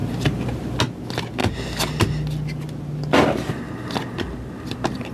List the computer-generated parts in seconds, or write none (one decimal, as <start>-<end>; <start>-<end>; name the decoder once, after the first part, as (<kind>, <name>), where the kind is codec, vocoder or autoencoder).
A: 0.0-0.8 (vocoder, BigVGAN v2)

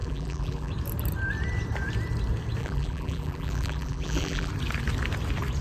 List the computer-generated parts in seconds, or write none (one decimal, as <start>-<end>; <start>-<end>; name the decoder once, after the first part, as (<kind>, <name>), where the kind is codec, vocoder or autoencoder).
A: 0.0-0.7 (vocoder, BigVGAN v2); 2.6-4.5

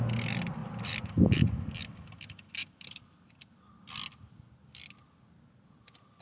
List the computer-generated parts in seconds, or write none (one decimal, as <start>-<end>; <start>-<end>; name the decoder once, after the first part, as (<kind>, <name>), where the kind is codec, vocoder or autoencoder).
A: 0.6-2.2 (vocoder, BigVGAN v2); 2.6-3.5